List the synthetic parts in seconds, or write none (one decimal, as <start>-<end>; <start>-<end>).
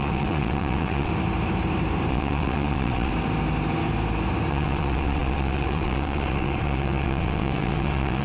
0.0-1.1; 2.1-3.1; 4.5-8.2